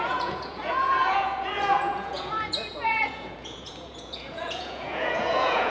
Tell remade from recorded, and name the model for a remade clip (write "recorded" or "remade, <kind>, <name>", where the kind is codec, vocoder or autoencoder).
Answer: remade, vocoder, Vocos